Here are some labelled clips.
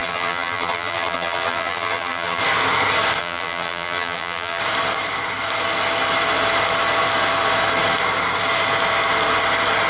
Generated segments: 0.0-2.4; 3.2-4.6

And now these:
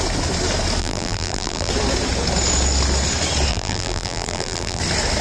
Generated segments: 0.8-1.7; 3.5-4.8

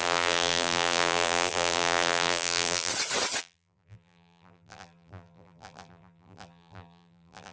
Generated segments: 0.0-2.9; 3.4-7.5

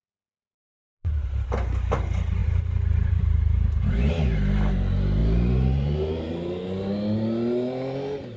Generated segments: 0.0-1.5; 2.4-4.1; 5.2-6.3